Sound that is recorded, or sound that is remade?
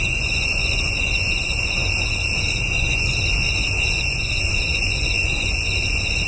remade